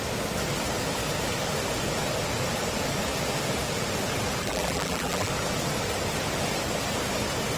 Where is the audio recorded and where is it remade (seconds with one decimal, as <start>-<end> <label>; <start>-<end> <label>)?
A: 0.0-4.4 recorded; 4.4-5.3 remade; 5.3-7.6 recorded

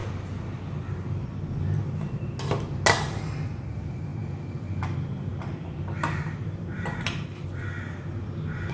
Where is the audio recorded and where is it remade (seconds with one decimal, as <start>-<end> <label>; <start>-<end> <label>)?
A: 0.0-5.3 recorded; 5.3-7.5 remade; 7.5-8.7 recorded

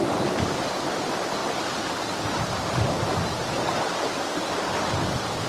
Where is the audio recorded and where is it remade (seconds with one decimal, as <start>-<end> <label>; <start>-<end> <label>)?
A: 0.0-5.5 recorded